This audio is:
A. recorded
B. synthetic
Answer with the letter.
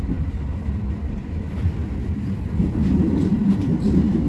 B